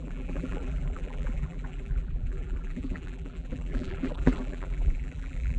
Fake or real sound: fake